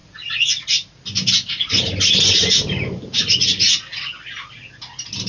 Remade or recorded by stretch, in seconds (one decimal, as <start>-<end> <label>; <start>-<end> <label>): 0.0-5.3 recorded